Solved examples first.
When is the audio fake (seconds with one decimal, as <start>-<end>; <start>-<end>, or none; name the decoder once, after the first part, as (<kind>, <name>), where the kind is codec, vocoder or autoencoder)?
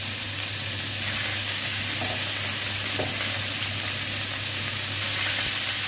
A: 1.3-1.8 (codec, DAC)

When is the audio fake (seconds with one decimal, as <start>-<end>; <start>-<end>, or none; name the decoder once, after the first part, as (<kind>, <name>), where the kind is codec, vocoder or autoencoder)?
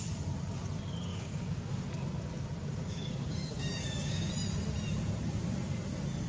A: 1.1-1.9 (codec, DAC); 2.6-4.3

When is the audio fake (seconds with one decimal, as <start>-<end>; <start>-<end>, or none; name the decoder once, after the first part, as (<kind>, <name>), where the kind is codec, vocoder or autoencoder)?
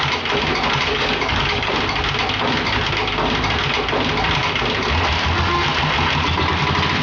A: 0.9-1.7 (codec, DAC)